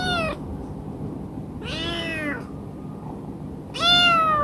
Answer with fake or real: real